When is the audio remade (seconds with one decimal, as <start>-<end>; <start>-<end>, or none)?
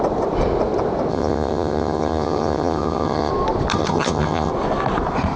1.1-3.3; 3.7-4.5